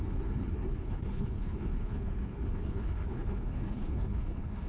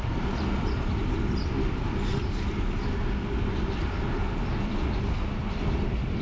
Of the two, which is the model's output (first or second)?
first